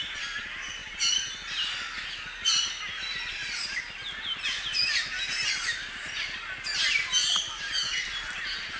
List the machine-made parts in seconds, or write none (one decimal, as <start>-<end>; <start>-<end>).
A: none